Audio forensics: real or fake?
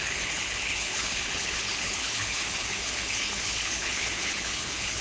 fake